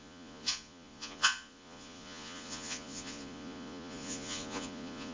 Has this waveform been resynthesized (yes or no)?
yes